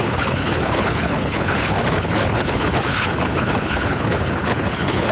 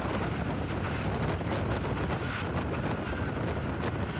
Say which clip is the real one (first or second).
second